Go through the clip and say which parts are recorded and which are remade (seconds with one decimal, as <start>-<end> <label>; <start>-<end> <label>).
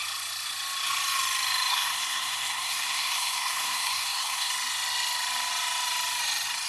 0.0-1.7 recorded; 1.7-4.5 remade; 4.5-6.7 recorded